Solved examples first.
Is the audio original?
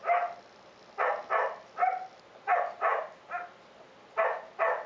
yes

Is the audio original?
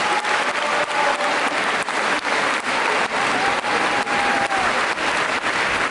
yes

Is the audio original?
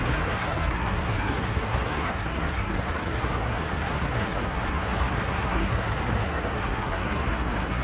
no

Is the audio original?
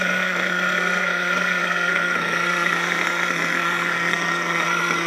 no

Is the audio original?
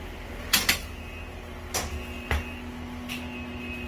yes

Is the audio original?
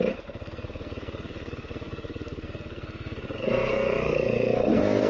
no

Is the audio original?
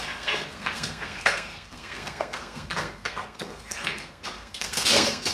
no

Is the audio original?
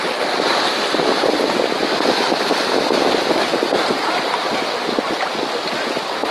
yes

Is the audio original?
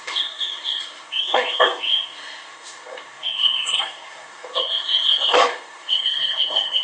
no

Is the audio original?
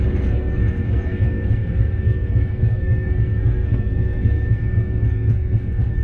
no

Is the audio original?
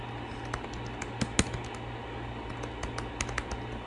yes